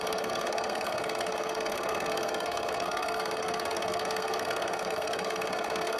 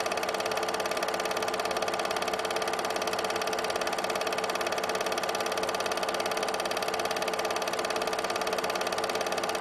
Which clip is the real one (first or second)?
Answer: second